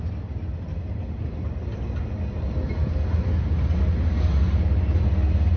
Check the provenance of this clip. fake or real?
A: real